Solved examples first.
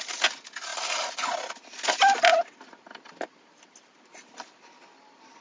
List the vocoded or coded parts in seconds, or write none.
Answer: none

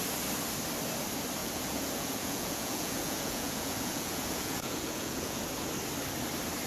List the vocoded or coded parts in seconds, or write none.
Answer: 1.4-5.4 (vocoder, Vocos)

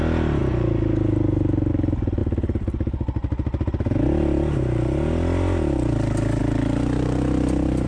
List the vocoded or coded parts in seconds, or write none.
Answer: none

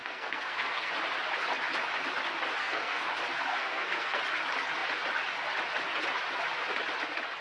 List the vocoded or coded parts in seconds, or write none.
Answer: 0.0-0.9 (codec, SNAC); 2.6-3.1; 3.5-4.2

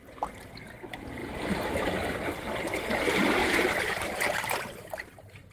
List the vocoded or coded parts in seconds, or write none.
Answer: 1.2-1.8 (vocoder, BigVGAN v2)

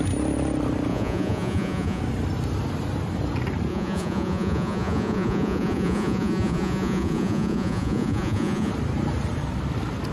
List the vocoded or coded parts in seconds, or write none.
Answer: 0.9-2.0 (vocoder, Vocos); 3.7-8.7

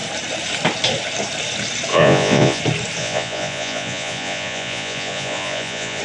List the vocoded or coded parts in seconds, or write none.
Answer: 1.9-2.6 (vocoder, Vocos); 3.0-6.0

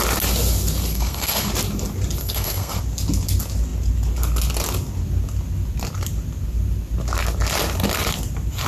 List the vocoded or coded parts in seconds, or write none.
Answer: 0.9-1.5 (codec, SNAC); 2.2-2.8